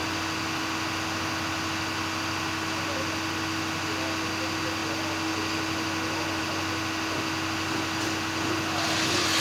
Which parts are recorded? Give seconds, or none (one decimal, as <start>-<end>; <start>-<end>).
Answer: 0.0-9.4